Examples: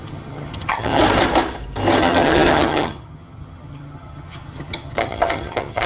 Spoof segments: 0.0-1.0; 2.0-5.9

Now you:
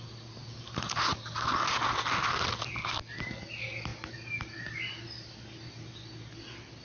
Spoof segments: none

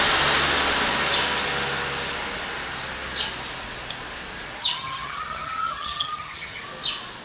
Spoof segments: 4.6-6.6